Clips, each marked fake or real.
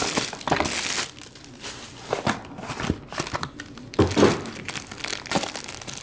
real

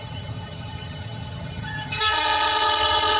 fake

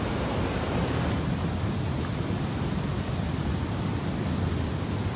real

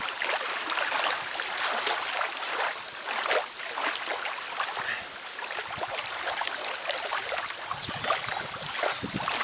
real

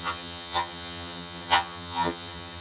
fake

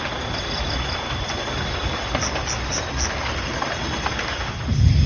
real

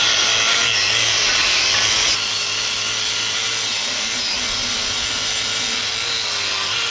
real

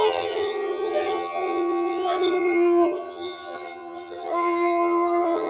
fake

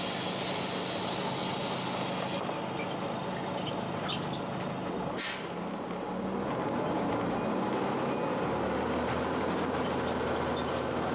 real